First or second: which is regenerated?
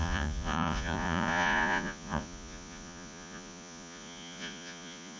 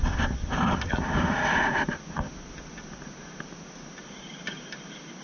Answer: first